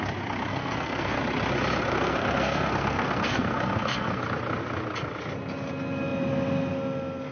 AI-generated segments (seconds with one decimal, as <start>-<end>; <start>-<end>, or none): 0.5-1.2; 1.9-4.2